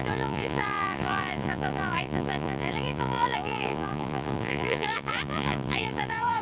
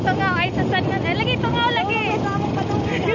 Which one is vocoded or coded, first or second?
first